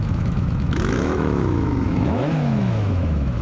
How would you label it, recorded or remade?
remade